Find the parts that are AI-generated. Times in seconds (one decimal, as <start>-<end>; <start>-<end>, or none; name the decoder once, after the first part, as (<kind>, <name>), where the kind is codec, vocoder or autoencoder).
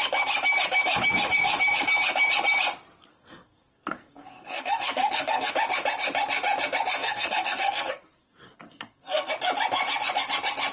3.1-5.5 (codec, SNAC); 7.0-9.3